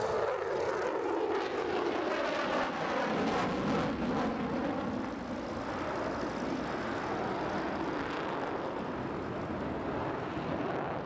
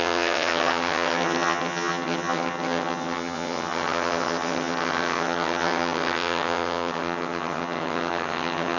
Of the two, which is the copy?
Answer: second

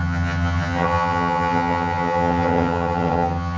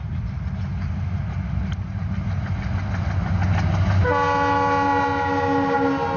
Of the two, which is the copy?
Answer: first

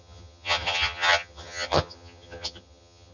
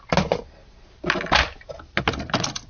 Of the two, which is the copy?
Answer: first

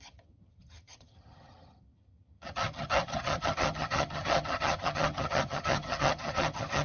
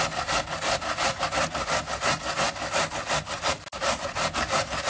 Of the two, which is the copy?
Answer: first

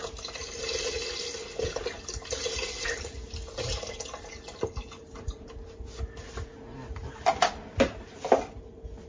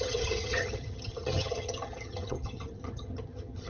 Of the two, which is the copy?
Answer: second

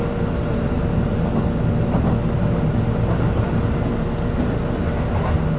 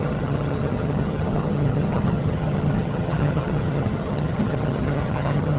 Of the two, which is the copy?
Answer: second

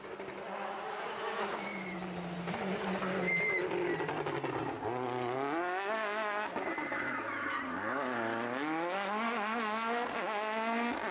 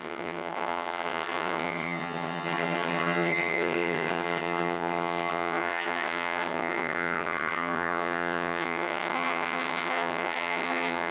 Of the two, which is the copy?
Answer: second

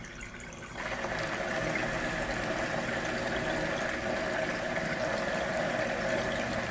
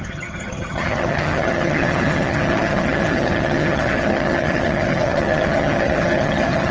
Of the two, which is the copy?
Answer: second